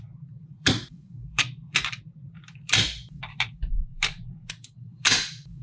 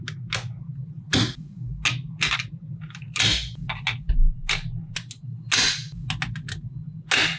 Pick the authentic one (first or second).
second